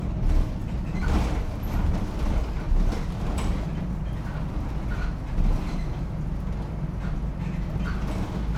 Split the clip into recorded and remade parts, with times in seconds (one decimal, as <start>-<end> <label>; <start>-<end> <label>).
0.0-8.6 recorded